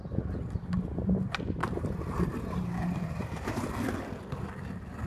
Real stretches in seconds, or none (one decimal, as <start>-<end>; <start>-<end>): 0.0-1.6; 3.6-5.1